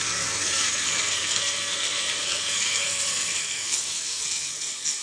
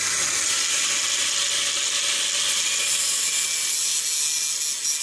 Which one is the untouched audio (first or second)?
second